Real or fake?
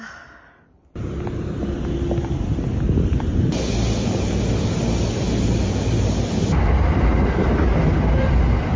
real